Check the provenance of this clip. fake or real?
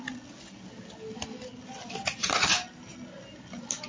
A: real